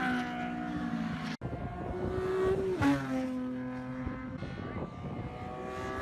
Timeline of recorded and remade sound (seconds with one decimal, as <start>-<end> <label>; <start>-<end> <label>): 0.0-3.9 recorded; 3.9-4.4 remade; 4.4-6.0 recorded